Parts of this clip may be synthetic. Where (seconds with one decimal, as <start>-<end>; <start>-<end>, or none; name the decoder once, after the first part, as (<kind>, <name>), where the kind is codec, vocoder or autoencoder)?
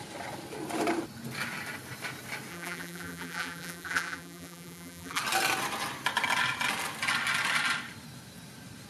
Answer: 2.5-5.2 (vocoder, BigVGAN v2)